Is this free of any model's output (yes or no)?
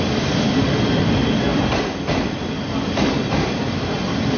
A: yes